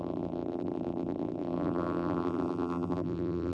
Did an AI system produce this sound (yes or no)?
yes